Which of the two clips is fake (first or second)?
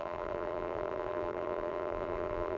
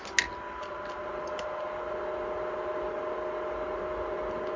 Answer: first